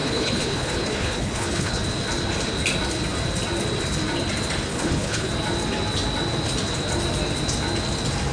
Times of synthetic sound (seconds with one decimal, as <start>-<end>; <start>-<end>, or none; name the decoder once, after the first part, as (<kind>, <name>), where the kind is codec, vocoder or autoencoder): 0.0-1.8 (codec, HILCodec); 4.7-5.3